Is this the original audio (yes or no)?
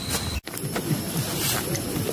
yes